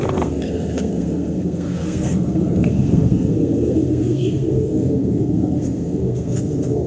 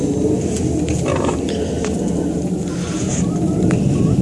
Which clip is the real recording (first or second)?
second